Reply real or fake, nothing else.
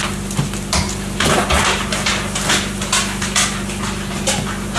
real